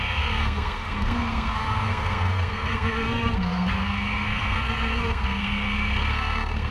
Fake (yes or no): yes